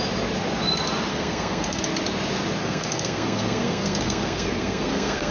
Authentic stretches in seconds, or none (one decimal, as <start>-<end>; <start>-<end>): 0.0-1.1; 1.8-2.6